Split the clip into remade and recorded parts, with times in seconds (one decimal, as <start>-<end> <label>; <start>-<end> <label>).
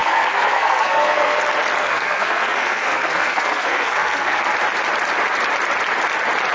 0.0-1.4 remade; 1.4-1.8 recorded; 1.8-4.4 remade; 4.4-6.5 recorded